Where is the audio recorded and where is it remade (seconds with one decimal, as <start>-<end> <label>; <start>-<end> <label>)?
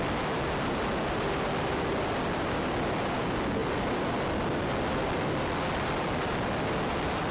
0.0-7.3 recorded